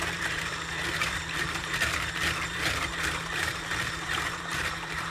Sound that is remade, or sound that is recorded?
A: remade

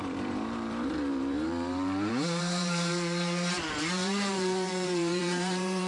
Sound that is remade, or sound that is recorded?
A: remade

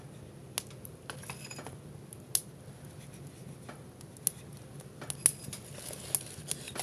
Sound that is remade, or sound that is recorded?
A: recorded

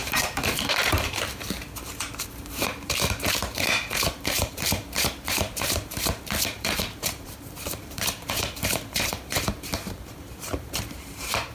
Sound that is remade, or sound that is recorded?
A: remade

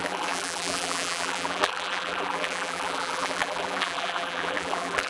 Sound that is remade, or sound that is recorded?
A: remade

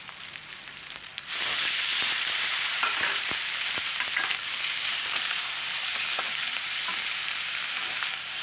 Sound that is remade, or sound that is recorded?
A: remade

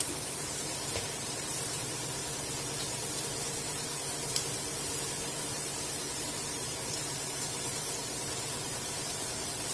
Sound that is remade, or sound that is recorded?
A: remade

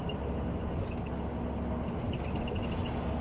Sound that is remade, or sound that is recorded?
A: recorded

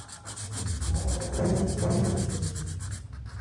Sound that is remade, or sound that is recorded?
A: recorded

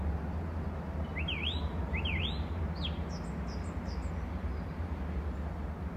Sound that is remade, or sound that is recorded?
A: recorded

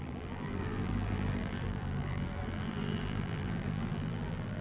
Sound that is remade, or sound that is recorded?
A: remade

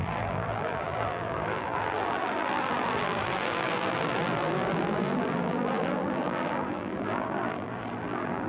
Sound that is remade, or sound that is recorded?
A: remade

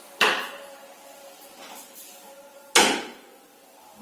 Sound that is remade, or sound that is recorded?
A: recorded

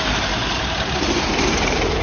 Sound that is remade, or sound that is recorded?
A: remade